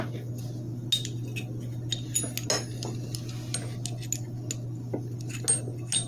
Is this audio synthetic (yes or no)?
no